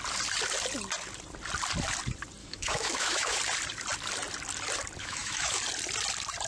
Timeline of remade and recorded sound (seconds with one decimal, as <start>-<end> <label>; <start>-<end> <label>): 0.0-2.4 recorded; 2.4-3.4 remade; 3.4-5.0 recorded; 5.0-5.6 remade; 5.6-6.5 recorded